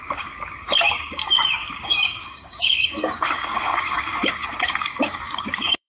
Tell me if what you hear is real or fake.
fake